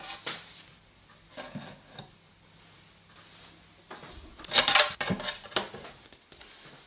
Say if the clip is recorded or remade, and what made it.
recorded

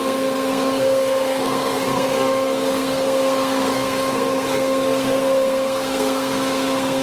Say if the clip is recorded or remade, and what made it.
remade, codec, SNAC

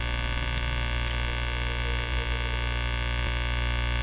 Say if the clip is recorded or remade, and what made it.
recorded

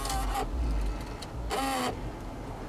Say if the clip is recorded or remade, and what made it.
recorded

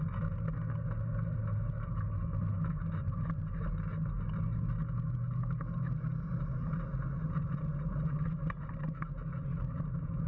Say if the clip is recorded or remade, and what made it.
recorded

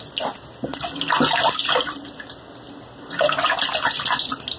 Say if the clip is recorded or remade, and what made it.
recorded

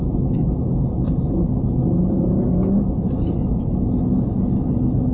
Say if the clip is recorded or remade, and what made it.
recorded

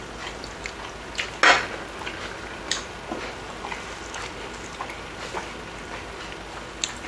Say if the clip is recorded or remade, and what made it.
recorded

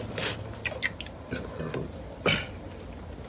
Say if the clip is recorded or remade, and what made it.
recorded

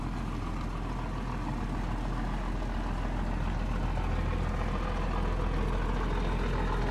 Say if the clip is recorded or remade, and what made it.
recorded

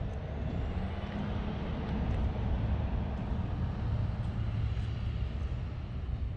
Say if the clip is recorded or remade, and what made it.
recorded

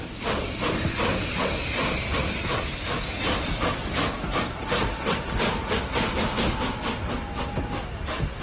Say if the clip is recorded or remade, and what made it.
recorded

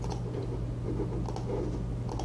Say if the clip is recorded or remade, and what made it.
recorded